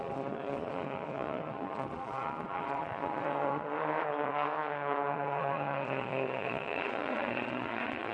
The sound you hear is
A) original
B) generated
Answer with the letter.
B